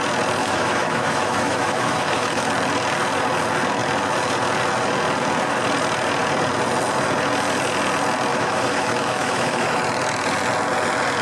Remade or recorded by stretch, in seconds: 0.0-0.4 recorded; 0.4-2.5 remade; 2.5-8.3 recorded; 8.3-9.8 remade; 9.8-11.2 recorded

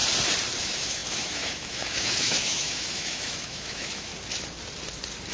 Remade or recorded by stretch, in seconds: 0.0-0.6 recorded; 0.6-4.1 remade; 4.1-5.3 recorded

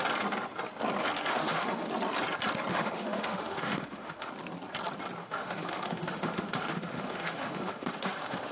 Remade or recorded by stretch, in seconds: 0.0-1.3 recorded; 1.3-1.9 remade; 1.9-2.7 recorded; 2.7-4.3 remade; 4.3-5.2 recorded; 5.2-8.5 remade